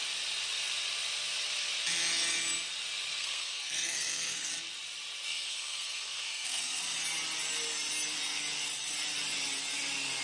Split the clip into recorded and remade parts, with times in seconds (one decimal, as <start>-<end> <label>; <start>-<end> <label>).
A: 0.0-3.2 recorded; 3.2-4.5 remade; 4.5-5.3 recorded; 5.3-6.8 remade; 6.8-10.2 recorded